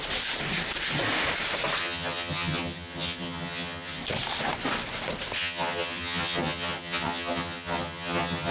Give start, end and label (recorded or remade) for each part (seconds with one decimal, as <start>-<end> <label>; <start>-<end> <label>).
0.0-1.8 recorded; 1.8-4.0 remade; 4.0-5.4 recorded; 5.4-8.5 remade